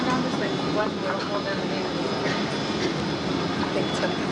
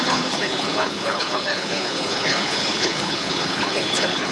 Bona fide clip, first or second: first